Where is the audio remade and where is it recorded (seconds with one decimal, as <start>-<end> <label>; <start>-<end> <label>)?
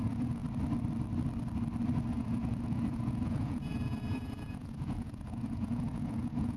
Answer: 0.0-0.4 remade; 0.4-2.1 recorded; 2.1-6.6 remade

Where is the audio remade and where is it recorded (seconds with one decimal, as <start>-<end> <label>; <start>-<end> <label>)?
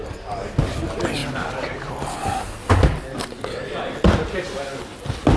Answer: 0.0-5.4 recorded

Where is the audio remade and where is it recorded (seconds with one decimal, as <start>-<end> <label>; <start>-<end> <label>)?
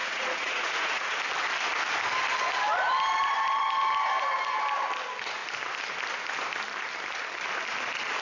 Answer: 0.0-1.1 remade; 1.1-8.2 recorded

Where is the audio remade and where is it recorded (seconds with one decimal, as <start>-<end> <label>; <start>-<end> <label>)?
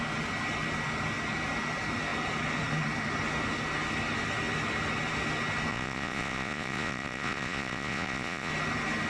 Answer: 0.0-5.7 recorded; 5.7-8.5 remade; 8.5-9.1 recorded